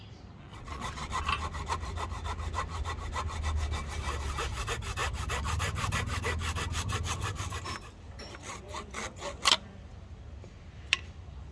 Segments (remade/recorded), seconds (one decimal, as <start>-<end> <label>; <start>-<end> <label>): 0.0-0.5 recorded; 0.5-1.2 remade; 1.2-11.5 recorded